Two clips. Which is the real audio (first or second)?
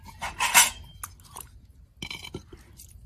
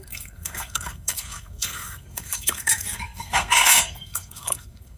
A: first